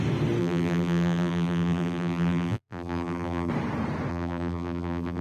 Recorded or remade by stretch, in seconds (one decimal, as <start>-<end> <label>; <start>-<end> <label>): 0.0-0.4 recorded; 0.4-3.5 remade; 3.5-4.1 recorded; 4.1-5.2 remade